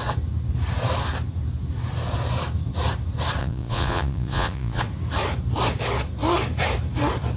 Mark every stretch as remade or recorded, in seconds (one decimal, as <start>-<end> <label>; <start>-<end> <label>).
0.0-3.4 recorded; 3.4-4.8 remade; 4.8-7.4 recorded